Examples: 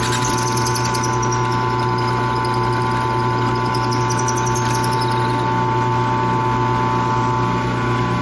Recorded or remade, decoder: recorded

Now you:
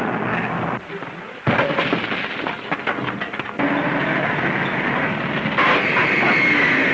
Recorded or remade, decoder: recorded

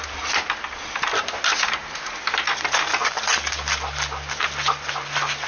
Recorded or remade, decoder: recorded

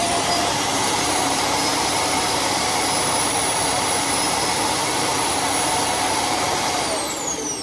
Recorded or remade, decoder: remade, vocoder, BigVGAN v2